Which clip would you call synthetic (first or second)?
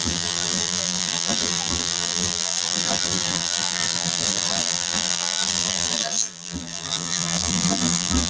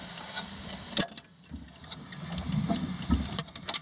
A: first